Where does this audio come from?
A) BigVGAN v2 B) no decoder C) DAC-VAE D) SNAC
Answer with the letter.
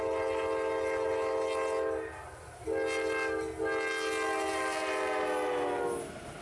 B